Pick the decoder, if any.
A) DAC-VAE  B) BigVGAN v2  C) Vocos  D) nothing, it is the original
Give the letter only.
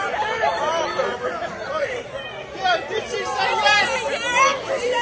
B